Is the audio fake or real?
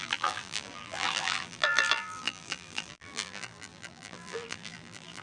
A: fake